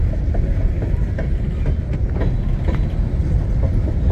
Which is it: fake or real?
real